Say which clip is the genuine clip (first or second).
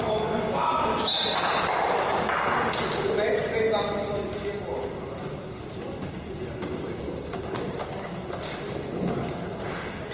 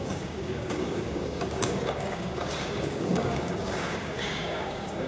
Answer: first